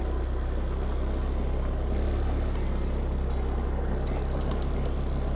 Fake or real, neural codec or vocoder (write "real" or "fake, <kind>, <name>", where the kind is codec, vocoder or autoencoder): real